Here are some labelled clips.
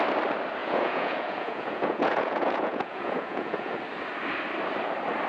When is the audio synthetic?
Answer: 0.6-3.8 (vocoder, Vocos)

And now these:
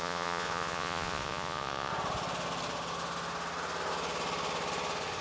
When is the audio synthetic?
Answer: 0.0-1.9 (vocoder, Vocos)

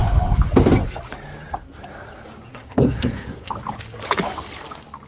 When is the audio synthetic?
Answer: 2.5-3.5 (codec, SNAC)

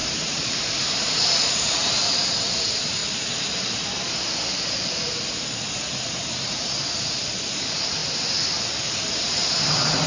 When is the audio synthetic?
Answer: 0.0-3.0 (vocoder, BigVGAN v2); 6.0-8.0; 9.1-10.1

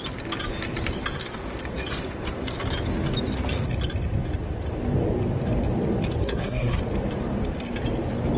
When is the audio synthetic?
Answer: 6.2-6.8 (codec, SNAC)

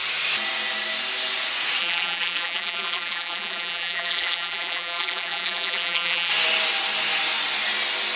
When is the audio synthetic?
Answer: 1.8-6.3 (vocoder, BigVGAN v2)

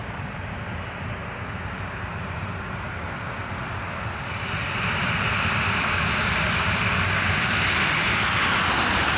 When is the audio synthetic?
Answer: 0.0-1.2 (vocoder, BigVGAN v2); 2.2-9.2

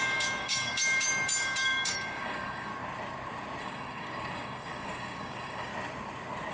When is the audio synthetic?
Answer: 0.0-2.7 (codec, DAC); 3.6-5.7